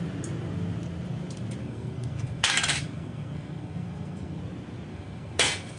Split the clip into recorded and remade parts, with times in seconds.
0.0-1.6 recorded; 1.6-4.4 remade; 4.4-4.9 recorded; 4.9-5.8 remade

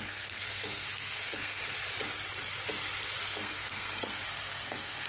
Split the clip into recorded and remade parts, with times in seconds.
0.0-1.6 remade; 1.6-3.2 recorded; 3.2-5.1 remade

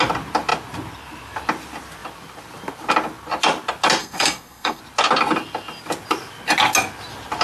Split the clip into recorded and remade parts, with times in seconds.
0.0-4.0 recorded; 4.0-4.8 remade; 4.8-7.4 recorded